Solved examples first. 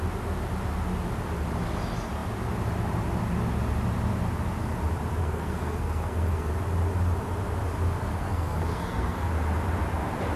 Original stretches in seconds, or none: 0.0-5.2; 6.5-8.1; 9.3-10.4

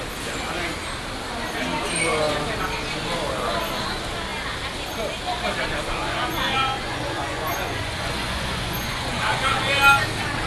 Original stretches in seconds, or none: 0.0-6.0; 9.7-10.5

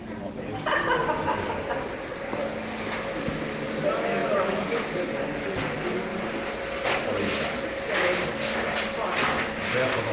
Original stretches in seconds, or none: 0.0-10.1

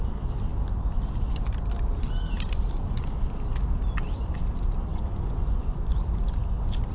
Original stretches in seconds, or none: 0.0-4.9; 6.0-6.9

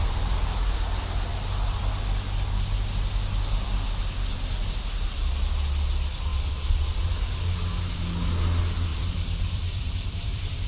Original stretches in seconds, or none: 0.0-1.3; 1.8-8.9

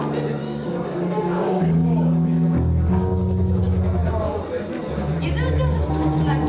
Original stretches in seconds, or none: 0.0-0.4; 3.6-6.5

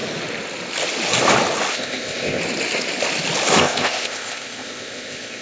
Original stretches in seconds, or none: 0.0-1.7; 2.4-3.6